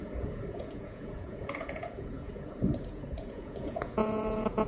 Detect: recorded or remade remade